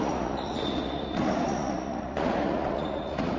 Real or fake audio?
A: fake